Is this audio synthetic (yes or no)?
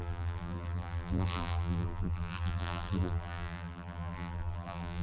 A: yes